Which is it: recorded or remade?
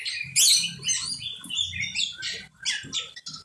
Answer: recorded